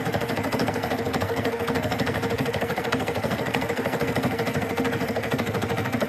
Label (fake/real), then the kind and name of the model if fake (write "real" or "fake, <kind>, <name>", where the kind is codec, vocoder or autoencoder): fake, codec, SNAC